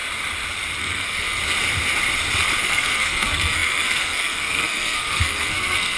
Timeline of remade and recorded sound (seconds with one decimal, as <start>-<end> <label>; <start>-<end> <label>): 0.0-0.8 recorded; 0.8-1.4 remade; 1.4-2.6 recorded; 2.6-6.0 remade